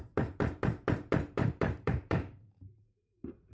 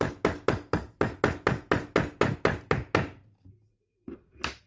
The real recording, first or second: second